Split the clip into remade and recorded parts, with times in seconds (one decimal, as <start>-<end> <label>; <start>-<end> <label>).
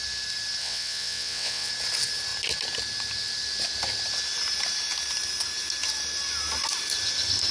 0.0-0.6 recorded; 0.6-1.7 remade; 1.7-7.5 recorded